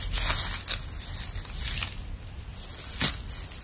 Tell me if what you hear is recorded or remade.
recorded